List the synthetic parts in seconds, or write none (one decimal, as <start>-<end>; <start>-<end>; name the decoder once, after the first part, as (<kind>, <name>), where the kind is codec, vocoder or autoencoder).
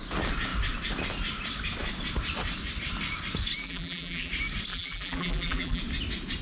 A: 3.6-4.3 (vocoder, BigVGAN v2); 4.7-5.8